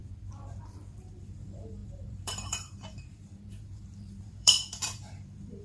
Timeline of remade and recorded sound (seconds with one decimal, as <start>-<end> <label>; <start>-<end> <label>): 0.0-1.0 recorded; 1.0-5.6 remade